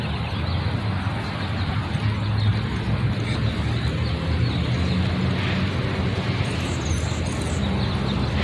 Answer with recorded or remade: recorded